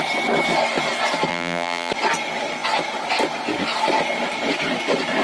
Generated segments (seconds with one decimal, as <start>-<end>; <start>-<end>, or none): 1.3-1.9